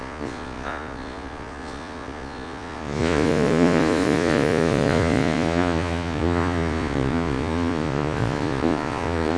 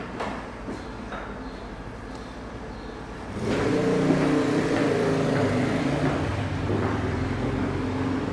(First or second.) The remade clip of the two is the first